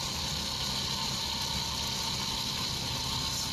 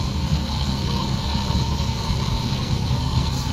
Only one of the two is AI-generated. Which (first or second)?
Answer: second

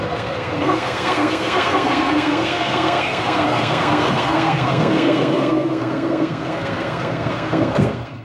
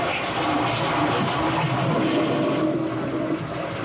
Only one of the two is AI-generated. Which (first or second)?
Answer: first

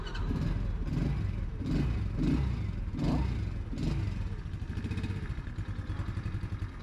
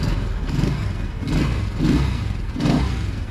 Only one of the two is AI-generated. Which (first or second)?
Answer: second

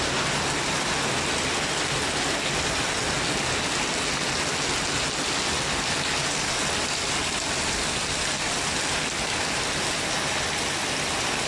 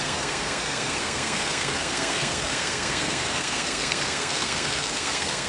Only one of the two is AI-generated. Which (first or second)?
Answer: second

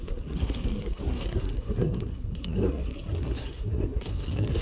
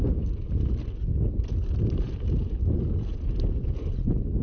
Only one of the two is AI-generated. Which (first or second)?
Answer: first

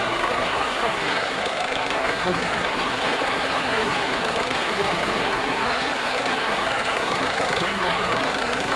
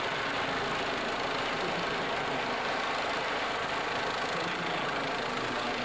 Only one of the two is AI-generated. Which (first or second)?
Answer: first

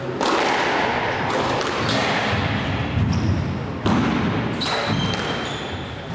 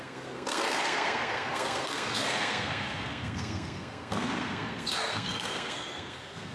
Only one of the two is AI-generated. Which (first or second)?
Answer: second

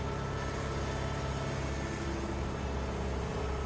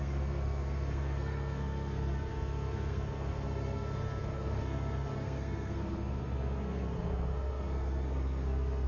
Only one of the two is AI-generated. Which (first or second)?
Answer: second